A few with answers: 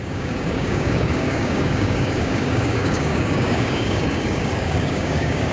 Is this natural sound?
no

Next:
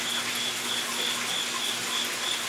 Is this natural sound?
yes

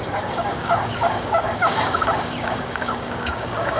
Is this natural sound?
no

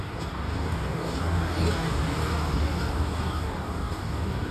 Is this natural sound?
no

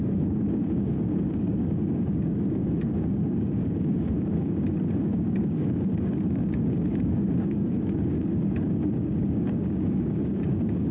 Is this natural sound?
no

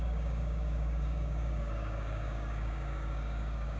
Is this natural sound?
no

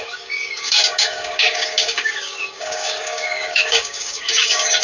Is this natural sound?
no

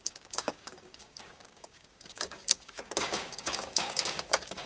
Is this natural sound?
no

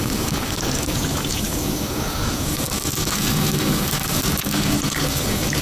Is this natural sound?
no